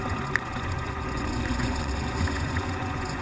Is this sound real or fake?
fake